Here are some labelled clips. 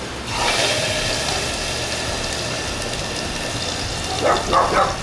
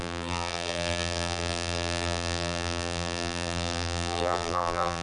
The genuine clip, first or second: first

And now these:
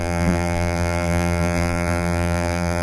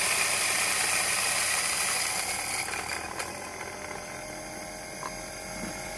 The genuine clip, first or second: second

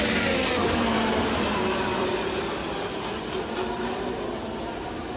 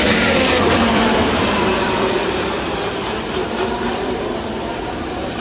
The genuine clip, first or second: first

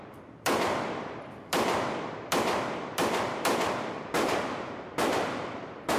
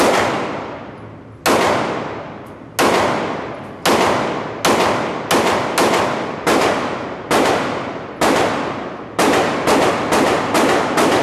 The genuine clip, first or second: second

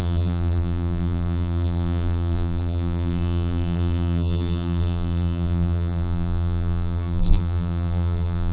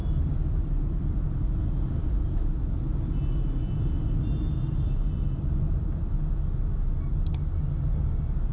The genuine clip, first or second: second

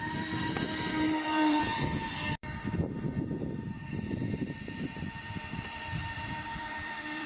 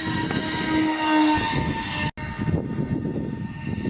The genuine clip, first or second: second